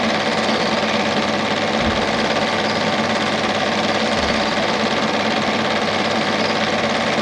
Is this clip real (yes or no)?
yes